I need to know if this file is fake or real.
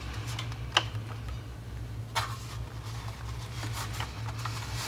real